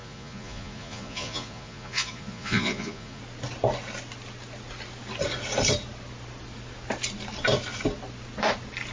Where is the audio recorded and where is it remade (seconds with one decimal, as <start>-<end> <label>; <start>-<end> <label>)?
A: 0.0-3.2 remade; 3.2-8.9 recorded